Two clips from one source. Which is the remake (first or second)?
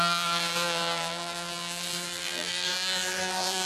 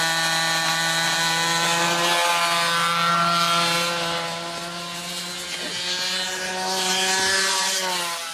first